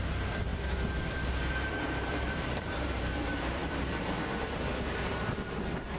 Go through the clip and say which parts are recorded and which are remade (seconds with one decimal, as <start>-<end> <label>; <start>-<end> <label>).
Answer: 0.0-0.5 remade; 0.5-1.1 recorded; 1.1-6.0 remade